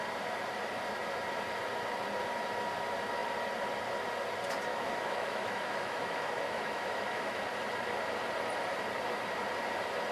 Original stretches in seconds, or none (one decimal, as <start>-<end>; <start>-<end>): 0.0-4.7; 7.4-10.1